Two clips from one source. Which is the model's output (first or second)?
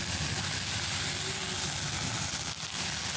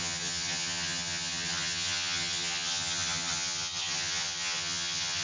second